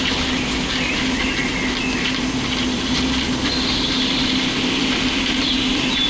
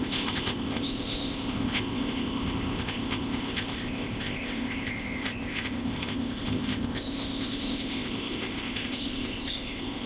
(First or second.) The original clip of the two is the first